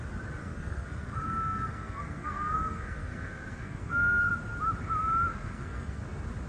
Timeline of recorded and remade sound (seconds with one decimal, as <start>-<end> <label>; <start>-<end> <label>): 0.0-0.4 recorded; 0.4-4.3 remade; 4.3-5.3 recorded; 5.3-6.0 remade; 6.0-6.5 recorded